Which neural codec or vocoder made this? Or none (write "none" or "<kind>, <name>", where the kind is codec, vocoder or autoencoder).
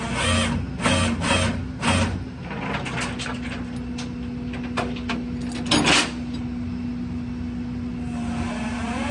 none